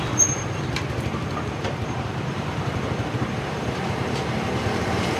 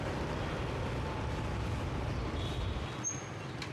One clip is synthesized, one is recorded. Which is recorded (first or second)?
second